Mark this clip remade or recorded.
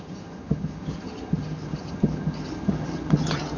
remade